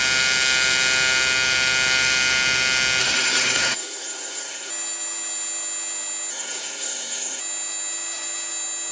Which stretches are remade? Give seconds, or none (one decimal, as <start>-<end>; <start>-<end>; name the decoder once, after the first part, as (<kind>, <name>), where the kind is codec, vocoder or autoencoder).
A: 3.0-4.7 (codec, SNAC); 6.3-7.4